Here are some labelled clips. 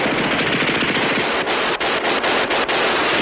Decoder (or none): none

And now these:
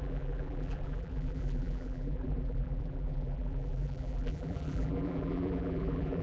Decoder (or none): vocoder, BigVGAN v2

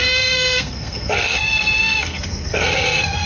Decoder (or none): codec, SNAC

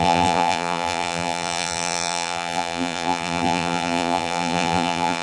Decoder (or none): vocoder, BigVGAN v2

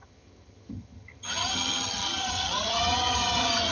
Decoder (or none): vocoder, HiFi-GAN